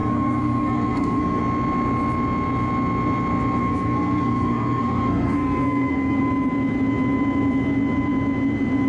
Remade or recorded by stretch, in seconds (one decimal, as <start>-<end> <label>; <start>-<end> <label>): 0.0-1.4 remade; 1.4-3.6 recorded; 3.6-6.2 remade; 6.2-8.9 recorded